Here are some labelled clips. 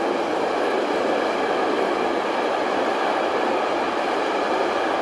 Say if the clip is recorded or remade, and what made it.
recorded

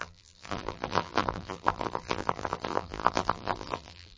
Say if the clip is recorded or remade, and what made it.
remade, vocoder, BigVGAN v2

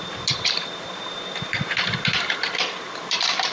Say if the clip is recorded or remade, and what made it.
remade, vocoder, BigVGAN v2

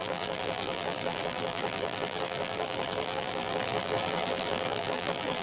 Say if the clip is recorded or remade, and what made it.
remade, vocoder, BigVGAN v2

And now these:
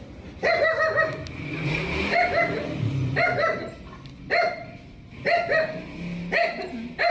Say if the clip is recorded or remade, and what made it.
recorded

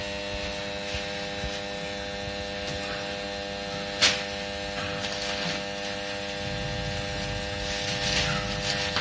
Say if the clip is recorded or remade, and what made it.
recorded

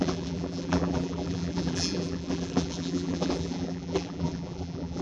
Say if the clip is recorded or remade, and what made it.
remade, vocoder, BigVGAN v2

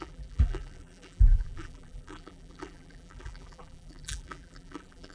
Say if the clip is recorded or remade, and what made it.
remade, vocoder, BigVGAN v2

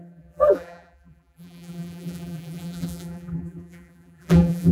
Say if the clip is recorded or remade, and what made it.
remade, vocoder, BigVGAN v2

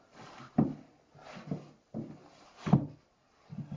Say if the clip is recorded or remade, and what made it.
recorded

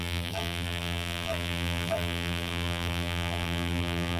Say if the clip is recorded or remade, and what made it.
remade, vocoder, BigVGAN v2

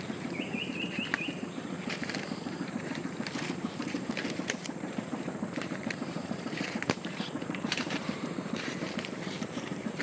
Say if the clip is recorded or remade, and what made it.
remade, vocoder, BigVGAN v2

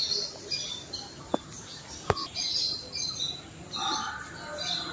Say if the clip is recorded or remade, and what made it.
recorded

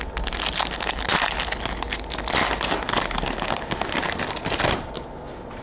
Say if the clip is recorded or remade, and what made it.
recorded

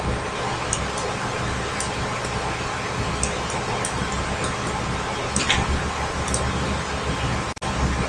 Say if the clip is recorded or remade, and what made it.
recorded